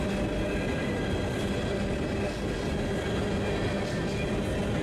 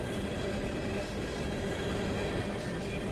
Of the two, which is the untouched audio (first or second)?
first